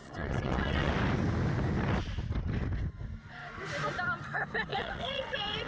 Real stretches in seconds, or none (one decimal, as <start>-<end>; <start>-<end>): 0.9-4.7